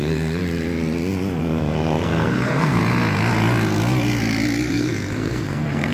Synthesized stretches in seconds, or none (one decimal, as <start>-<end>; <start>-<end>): 0.0-0.4; 1.4-2.8; 4.7-5.9